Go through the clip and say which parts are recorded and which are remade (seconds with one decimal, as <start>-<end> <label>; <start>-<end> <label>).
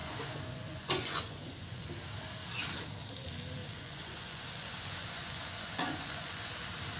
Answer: 0.0-1.9 remade; 1.9-3.6 recorded; 3.6-6.5 remade; 6.5-7.0 recorded